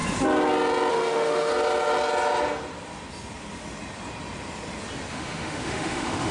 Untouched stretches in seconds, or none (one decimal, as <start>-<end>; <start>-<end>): 0.0-0.9; 1.5-5.1